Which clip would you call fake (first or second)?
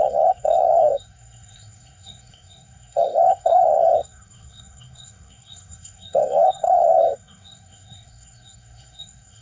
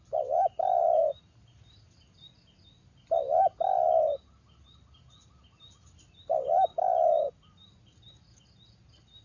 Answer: first